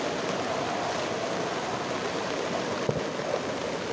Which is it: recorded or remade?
recorded